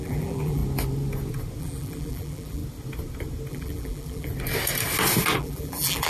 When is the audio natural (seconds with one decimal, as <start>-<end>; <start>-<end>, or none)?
0.6-1.6; 2.6-3.5; 4.3-5.4